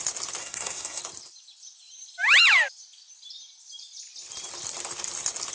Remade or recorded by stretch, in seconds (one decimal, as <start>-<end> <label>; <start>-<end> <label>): 0.0-0.4 recorded; 0.4-1.0 remade; 1.0-5.5 recorded